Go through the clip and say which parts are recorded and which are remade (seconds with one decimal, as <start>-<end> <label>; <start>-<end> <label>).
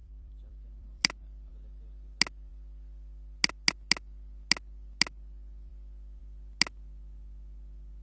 0.0-1.5 remade; 1.5-8.0 recorded